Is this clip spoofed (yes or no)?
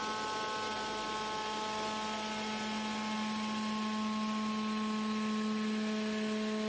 no